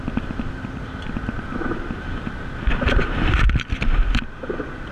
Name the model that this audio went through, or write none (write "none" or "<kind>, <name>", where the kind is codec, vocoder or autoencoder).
none